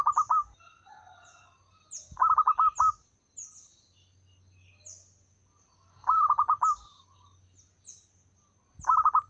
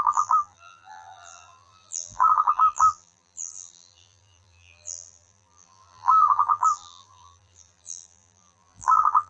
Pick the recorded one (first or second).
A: first